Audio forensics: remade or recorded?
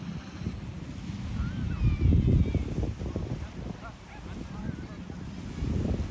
recorded